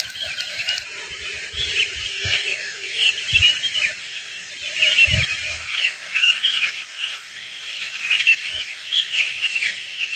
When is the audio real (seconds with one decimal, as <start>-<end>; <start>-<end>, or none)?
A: 0.0-2.1; 3.1-4.0; 4.5-5.5